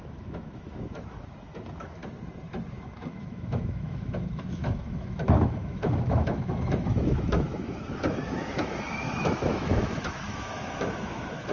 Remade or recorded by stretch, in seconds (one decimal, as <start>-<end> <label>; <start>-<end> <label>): 0.0-2.0 remade; 2.0-2.7 recorded; 2.7-11.5 remade